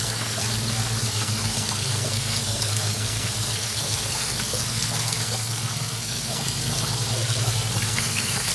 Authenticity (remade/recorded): remade